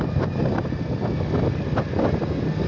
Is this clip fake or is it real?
real